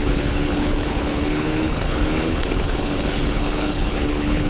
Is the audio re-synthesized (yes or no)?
yes